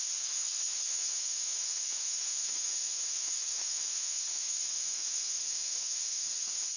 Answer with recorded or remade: remade